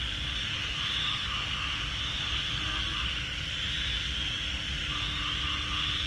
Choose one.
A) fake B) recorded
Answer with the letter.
B